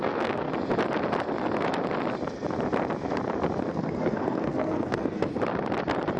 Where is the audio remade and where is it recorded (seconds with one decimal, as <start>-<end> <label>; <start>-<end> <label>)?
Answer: 0.0-0.5 remade; 0.5-3.7 recorded; 3.7-5.3 remade; 5.3-6.2 recorded